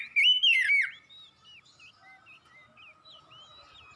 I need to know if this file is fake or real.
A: real